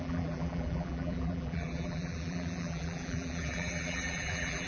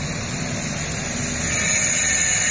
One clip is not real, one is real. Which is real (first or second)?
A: second